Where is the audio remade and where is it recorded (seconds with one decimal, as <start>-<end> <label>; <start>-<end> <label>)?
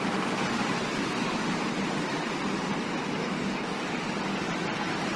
0.0-3.2 recorded; 3.2-3.8 remade; 3.8-5.2 recorded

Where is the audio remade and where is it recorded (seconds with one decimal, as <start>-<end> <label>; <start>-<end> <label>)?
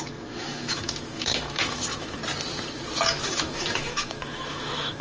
0.0-2.2 remade; 2.2-3.2 recorded; 3.2-5.0 remade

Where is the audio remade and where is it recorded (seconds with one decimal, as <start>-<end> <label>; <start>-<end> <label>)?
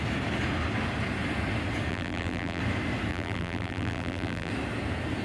0.0-1.9 recorded; 1.9-2.6 remade; 2.6-3.1 recorded; 3.1-4.5 remade; 4.5-5.2 recorded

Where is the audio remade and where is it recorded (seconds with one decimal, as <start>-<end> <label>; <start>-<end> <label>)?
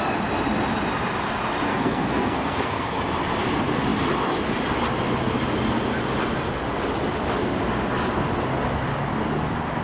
0.0-1.7 recorded; 1.7-3.0 remade; 3.0-9.8 recorded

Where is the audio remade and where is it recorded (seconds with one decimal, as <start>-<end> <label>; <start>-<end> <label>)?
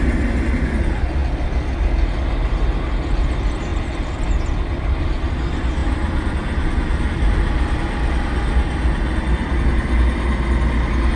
0.0-3.7 recorded; 3.7-5.0 remade; 5.0-5.8 recorded; 5.8-6.9 remade; 6.9-11.2 recorded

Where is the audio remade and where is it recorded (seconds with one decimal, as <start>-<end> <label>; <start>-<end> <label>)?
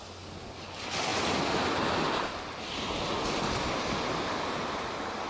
0.0-5.3 recorded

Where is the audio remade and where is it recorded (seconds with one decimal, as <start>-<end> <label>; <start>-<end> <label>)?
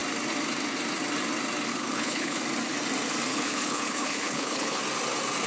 0.0-1.7 recorded; 1.7-2.4 remade; 2.4-3.3 recorded; 3.3-4.8 remade; 4.8-5.5 recorded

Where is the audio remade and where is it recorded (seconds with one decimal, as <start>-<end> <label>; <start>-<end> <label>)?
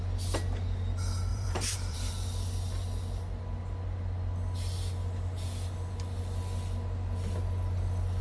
0.0-1.3 recorded; 1.3-2.1 remade; 2.1-8.2 recorded